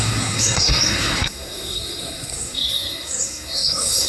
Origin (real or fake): fake